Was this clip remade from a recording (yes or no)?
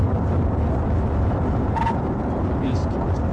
yes